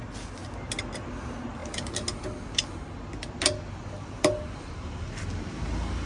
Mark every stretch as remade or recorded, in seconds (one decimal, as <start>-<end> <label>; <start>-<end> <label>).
0.0-6.1 recorded